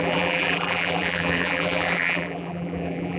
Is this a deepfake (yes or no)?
yes